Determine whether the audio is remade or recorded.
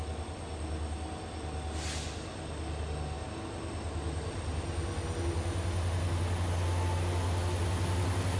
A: recorded